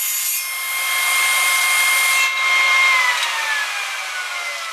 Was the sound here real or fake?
real